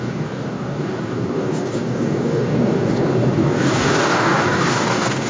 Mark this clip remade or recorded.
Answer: remade